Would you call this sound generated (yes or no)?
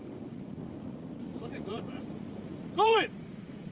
yes